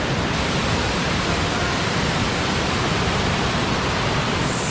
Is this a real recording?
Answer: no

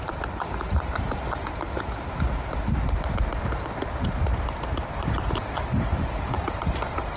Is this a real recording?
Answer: no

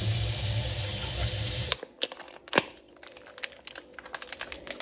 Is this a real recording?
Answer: yes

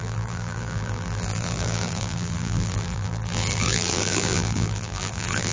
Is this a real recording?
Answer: no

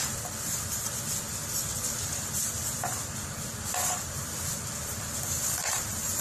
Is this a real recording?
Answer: no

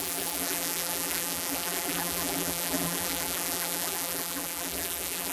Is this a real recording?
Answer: no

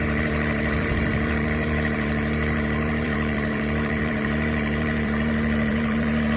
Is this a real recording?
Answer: no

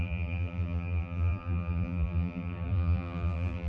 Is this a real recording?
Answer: no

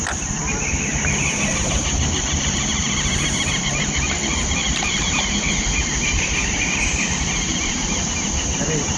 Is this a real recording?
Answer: no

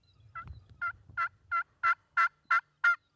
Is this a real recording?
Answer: yes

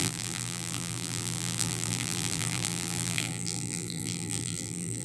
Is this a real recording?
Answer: no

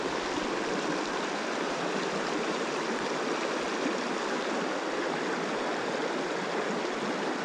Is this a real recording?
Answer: yes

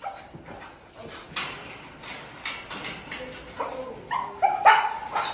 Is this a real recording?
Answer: yes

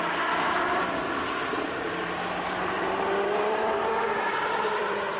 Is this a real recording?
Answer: no